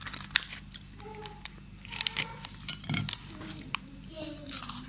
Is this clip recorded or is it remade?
remade